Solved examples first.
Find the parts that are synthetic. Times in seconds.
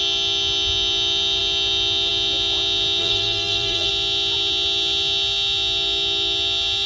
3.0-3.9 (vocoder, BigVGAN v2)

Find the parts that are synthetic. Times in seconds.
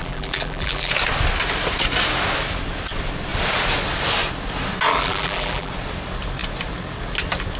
0.0-0.9 (vocoder, BigVGAN v2); 4.9-5.7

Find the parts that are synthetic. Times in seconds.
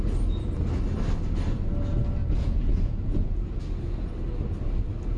2.2-3.5 (vocoder, Vocos)